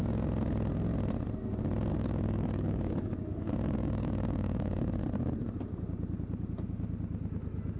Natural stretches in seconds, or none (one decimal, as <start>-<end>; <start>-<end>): 0.0-1.9; 5.0-7.8